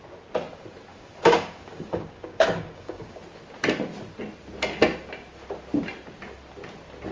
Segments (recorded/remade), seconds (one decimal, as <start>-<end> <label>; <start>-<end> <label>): 0.0-0.9 recorded; 0.9-3.2 remade; 3.2-7.1 recorded